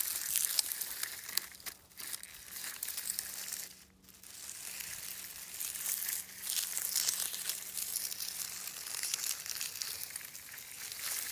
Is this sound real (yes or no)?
yes